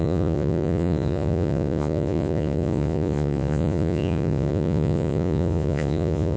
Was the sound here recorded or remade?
remade